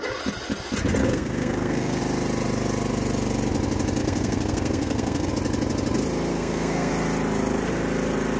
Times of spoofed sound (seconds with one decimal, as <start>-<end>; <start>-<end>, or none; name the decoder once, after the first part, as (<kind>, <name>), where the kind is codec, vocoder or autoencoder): 1.0-2.0 (codec, SNAC); 4.0-5.3; 6.3-6.9